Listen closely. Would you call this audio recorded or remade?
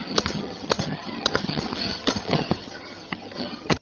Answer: remade